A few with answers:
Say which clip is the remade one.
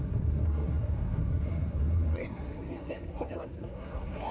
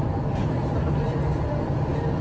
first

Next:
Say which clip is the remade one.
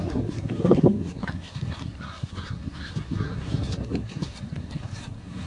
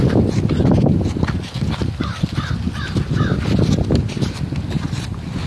first